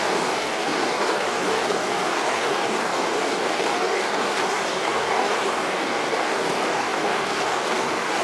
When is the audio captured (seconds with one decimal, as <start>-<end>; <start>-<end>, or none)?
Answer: none